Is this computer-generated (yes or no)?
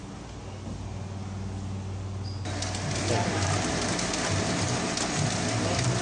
no